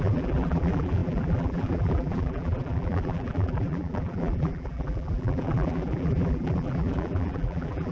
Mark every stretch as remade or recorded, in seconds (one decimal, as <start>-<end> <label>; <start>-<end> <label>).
0.0-7.9 remade